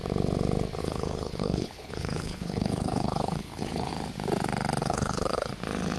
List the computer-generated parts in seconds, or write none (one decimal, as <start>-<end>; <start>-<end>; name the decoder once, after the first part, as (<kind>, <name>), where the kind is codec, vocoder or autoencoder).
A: 0.8-3.9 (codec, HILCodec); 4.8-5.5